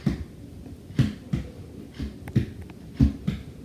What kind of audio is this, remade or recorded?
recorded